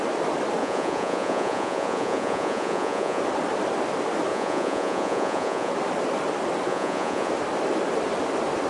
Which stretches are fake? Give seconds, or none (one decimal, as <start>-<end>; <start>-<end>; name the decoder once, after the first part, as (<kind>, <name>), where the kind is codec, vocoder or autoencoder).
0.6-3.2 (vocoder, Vocos); 4.3-5.7; 6.7-7.3